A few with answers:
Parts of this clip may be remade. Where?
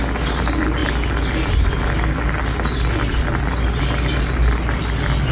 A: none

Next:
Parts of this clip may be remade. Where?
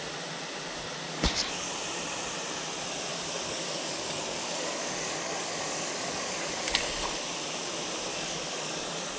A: 1.0-1.7 (codec, DAC); 3.1-6.6; 8.1-9.2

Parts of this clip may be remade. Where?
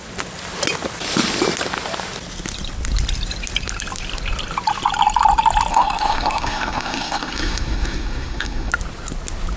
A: 5.7-8.7 (codec, SNAC)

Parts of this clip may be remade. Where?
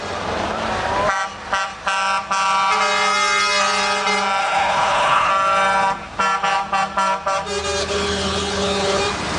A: 4.4-5.3 (codec, HILCodec); 7.8-9.0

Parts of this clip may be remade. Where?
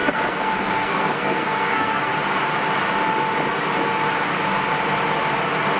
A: 0.0-2.1 (codec, SNAC)